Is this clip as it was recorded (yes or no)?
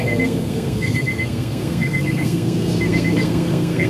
no